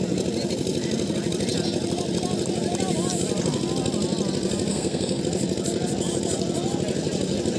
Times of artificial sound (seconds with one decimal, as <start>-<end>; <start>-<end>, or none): 4.7-5.2